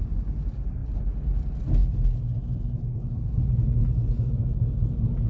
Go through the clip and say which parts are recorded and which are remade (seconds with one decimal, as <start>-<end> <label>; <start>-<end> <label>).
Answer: 0.0-5.3 recorded